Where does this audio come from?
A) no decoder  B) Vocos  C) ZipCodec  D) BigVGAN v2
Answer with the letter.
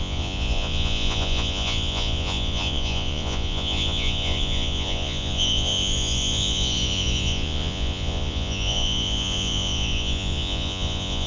B